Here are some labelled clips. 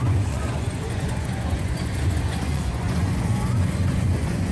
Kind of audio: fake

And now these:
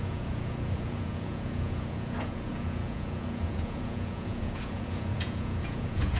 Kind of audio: fake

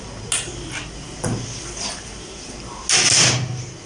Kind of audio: real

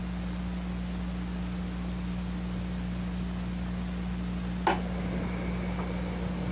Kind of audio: real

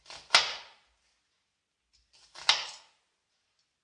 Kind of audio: real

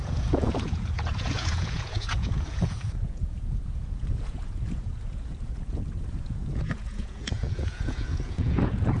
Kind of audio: fake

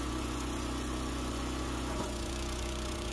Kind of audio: fake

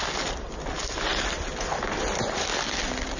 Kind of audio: real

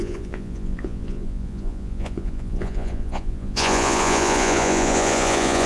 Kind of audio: fake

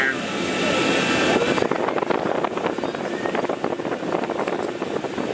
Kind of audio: real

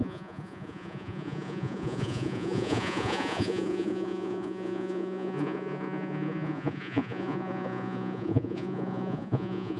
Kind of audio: fake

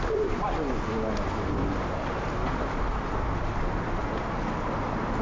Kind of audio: real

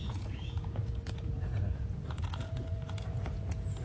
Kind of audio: fake